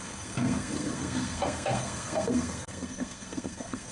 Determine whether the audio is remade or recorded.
remade